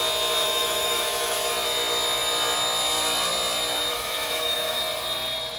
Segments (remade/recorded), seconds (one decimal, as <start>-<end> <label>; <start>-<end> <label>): 0.0-0.4 recorded; 0.4-1.5 remade; 1.5-3.9 recorded; 3.9-4.8 remade; 4.8-5.6 recorded